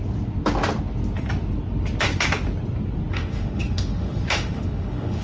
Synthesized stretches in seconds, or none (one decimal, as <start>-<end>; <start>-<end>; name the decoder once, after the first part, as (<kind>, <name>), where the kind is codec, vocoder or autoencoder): 3.1-5.2 (autoencoder, DAC-VAE)